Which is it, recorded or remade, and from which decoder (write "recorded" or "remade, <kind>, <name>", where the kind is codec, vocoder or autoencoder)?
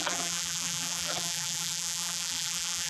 remade, vocoder, BigVGAN v2